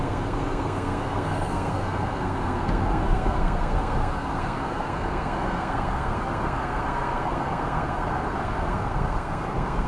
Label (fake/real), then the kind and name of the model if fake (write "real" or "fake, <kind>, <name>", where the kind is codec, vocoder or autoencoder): fake, codec, SNAC